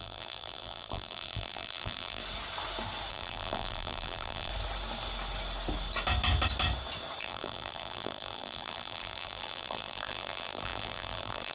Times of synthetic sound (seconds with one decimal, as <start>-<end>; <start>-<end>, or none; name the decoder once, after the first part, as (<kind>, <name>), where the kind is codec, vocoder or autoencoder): 0.0-2.2 (vocoder, BigVGAN v2); 3.1-4.5; 7.2-11.5